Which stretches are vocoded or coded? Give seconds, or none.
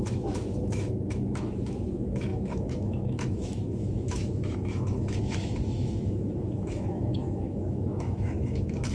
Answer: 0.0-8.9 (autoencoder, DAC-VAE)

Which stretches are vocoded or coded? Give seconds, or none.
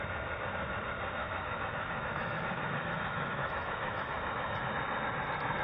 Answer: 1.2-4.6 (autoencoder, DAC-VAE)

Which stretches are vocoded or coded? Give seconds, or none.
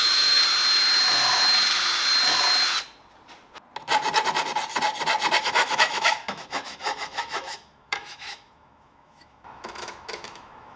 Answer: 0.0-0.4 (autoencoder, DAC-VAE); 5.4-10.8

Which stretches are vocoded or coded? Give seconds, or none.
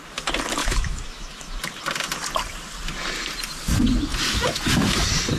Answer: 0.6-1.6 (autoencoder, DAC-VAE)